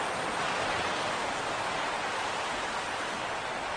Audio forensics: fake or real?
real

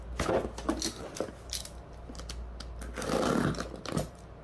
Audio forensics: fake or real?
real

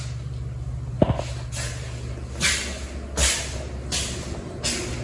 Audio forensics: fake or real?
real